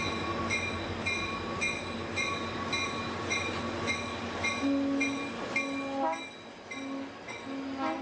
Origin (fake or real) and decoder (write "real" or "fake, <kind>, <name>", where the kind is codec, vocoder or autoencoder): real